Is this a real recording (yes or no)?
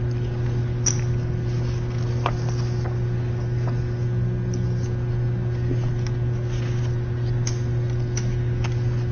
yes